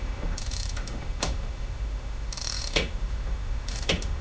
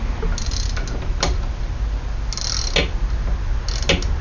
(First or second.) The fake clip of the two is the first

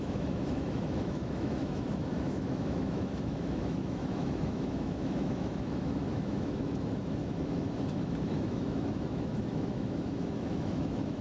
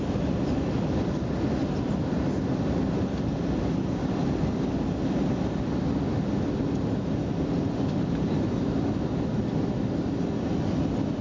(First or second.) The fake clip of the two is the first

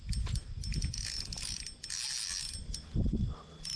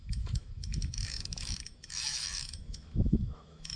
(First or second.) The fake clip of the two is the second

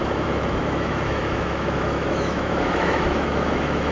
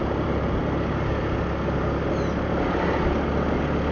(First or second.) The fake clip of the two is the first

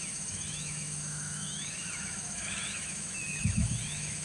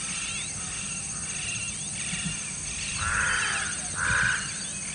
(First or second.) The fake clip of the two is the first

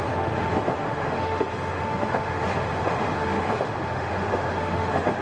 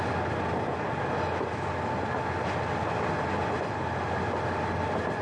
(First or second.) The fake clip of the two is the first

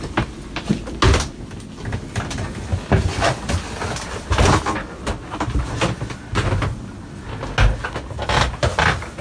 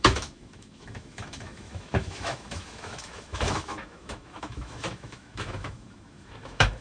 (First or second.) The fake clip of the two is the second